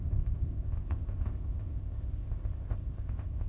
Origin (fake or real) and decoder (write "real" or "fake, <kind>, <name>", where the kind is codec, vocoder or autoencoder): fake, codec, ZipCodec